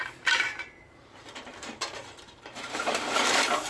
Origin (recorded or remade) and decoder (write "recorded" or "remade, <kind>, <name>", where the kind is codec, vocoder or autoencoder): remade, vocoder, BigVGAN v2